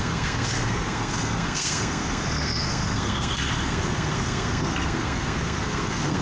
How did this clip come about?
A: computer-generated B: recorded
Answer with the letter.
A